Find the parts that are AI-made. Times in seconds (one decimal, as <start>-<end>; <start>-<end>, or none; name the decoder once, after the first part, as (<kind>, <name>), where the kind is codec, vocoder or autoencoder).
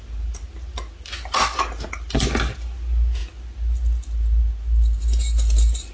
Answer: none